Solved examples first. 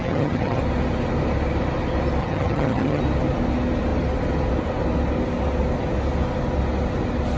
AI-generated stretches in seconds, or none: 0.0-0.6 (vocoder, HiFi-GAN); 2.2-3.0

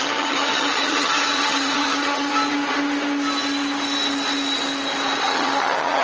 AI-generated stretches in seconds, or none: 0.0-2.3 (vocoder, HiFi-GAN); 5.2-6.0

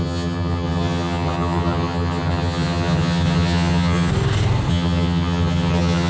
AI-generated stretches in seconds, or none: 0.0-4.1 (vocoder, HiFi-GAN); 4.7-6.1

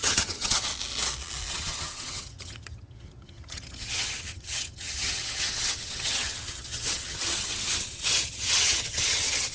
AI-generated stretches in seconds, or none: 0.0-0.7 (vocoder, HiFi-GAN); 1.5-9.5

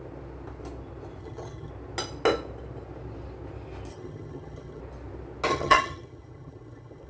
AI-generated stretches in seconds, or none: 1.2-1.7 (vocoder, HiFi-GAN); 3.9-4.8; 5.5-7.1

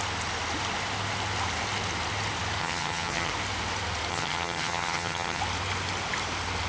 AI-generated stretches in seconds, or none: 2.6-3.3 (vocoder, HiFi-GAN); 4.1-5.4